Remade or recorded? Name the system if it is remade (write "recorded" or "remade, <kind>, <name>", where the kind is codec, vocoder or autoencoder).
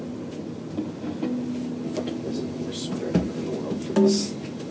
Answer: recorded